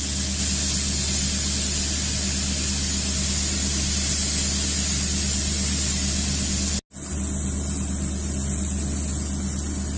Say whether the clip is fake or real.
real